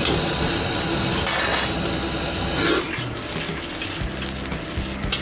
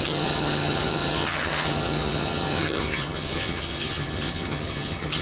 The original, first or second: first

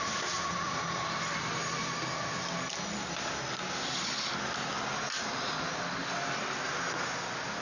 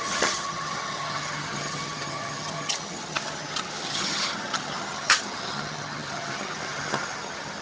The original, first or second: first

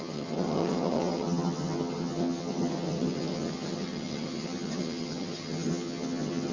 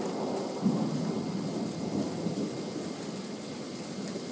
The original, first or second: second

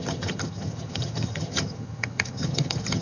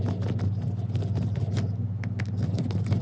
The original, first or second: second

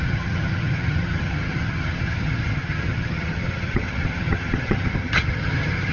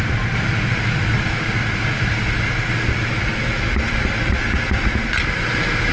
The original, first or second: second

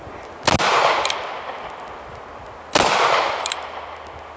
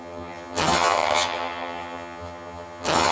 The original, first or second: first